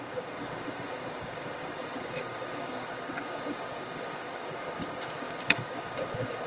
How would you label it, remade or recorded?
remade